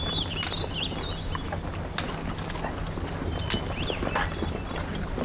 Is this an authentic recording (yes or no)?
yes